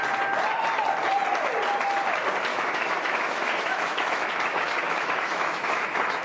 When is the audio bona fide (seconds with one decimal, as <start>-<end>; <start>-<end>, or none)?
0.0-2.5